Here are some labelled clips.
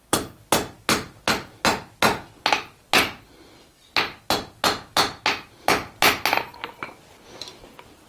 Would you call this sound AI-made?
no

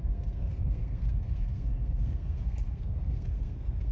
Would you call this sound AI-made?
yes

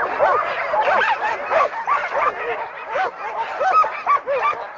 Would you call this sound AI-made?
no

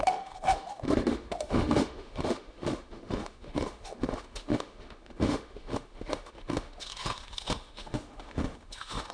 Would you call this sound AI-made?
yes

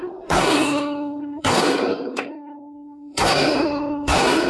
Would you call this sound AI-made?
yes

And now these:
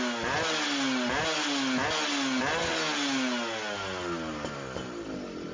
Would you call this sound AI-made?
no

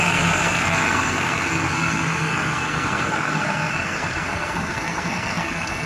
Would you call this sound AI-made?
yes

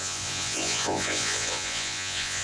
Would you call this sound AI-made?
yes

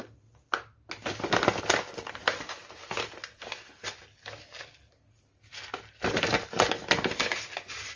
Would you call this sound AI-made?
no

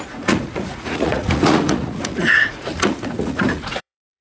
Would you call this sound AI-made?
yes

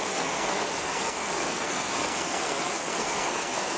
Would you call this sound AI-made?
yes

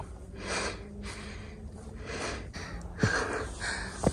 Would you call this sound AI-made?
yes